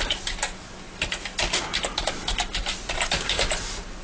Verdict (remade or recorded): recorded